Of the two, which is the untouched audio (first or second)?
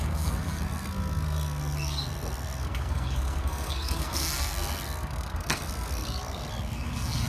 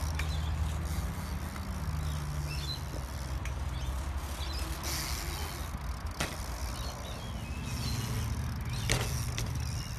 second